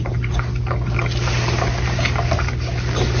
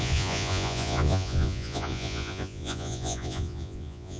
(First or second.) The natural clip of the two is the first